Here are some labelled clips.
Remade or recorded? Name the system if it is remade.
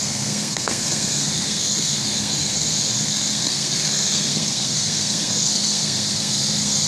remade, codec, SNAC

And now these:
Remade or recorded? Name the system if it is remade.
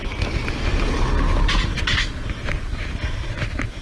recorded